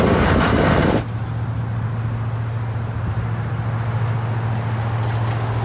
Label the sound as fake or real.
real